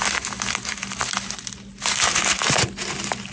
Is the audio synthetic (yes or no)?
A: no